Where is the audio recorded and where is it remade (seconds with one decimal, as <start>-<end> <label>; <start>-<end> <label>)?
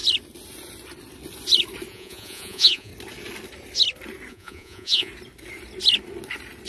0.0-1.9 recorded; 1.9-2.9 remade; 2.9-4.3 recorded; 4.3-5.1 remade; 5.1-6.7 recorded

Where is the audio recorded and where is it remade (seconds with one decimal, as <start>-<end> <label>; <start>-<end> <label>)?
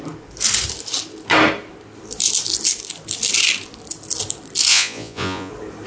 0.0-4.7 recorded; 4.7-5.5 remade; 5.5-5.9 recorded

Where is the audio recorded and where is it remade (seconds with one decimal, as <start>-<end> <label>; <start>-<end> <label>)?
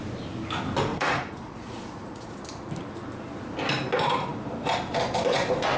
0.0-0.9 recorded; 0.9-2.4 remade; 2.4-5.8 recorded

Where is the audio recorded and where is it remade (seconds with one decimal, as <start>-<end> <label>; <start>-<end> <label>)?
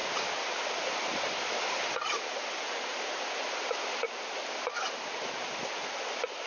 0.0-6.5 recorded